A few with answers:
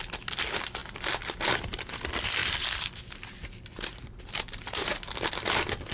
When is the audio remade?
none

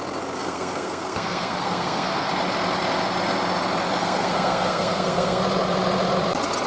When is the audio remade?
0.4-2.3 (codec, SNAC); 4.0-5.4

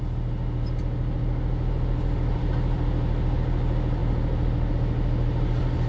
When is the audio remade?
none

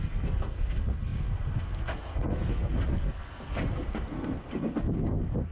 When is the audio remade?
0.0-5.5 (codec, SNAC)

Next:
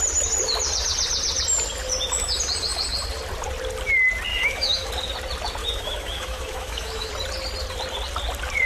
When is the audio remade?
4.3-4.9 (autoencoder, DAC-VAE); 5.6-7.1